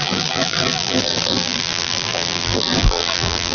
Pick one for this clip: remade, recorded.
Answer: remade